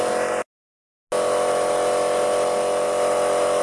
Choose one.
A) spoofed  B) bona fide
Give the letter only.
B